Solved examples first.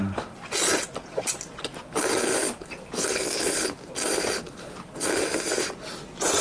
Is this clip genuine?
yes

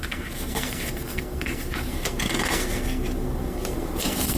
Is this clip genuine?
no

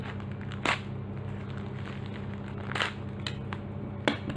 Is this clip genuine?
yes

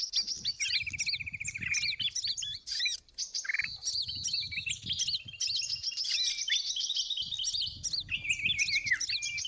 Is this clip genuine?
yes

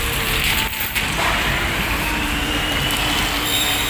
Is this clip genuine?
yes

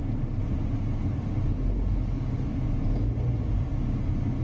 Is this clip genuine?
yes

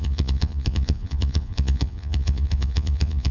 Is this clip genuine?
no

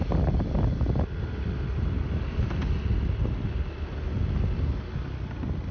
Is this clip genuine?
yes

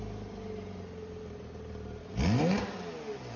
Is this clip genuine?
yes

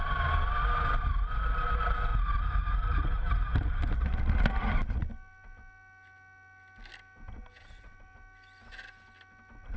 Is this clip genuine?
yes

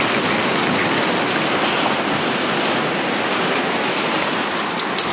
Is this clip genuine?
yes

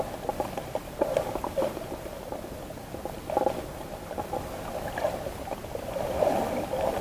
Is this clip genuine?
yes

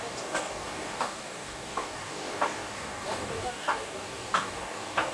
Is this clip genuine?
no